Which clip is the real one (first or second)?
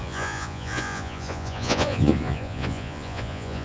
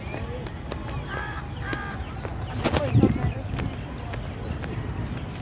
second